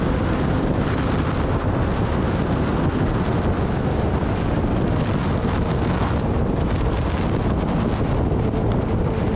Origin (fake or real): real